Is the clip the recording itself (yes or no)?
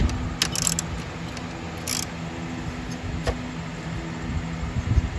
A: yes